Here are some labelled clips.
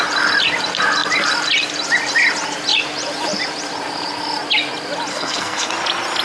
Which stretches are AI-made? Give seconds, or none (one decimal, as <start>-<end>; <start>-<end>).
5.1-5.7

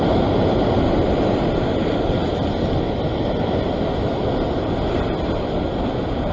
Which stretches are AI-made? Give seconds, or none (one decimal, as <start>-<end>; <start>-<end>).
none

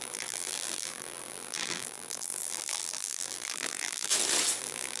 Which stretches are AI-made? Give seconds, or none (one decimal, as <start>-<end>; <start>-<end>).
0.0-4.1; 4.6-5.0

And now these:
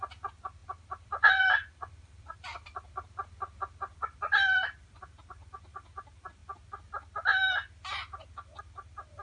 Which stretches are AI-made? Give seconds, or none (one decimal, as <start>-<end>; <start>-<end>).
0.6-4.9